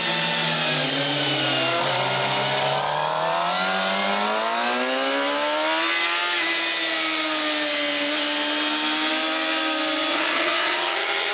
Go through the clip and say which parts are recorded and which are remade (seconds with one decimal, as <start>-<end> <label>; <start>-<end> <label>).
0.0-10.1 recorded; 10.1-11.3 remade